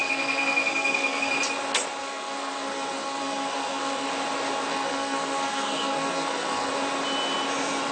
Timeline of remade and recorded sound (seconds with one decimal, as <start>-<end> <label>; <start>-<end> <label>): 0.0-1.3 remade; 1.3-2.0 recorded; 2.0-4.1 remade; 4.1-4.7 recorded; 4.7-6.7 remade; 6.7-7.9 recorded